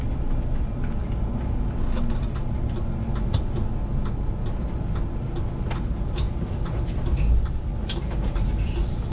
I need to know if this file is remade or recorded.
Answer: recorded